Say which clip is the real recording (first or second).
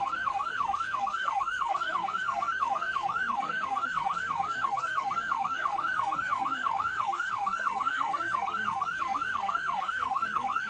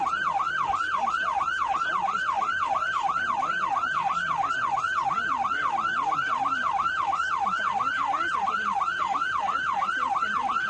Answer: second